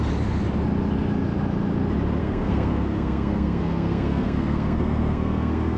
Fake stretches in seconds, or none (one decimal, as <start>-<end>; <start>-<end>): 2.2-5.8